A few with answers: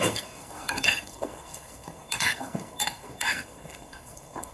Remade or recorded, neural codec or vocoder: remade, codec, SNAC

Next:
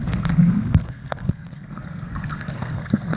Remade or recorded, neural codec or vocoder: remade, codec, SNAC